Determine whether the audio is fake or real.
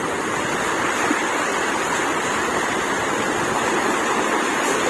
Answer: real